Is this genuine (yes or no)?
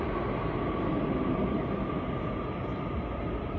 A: yes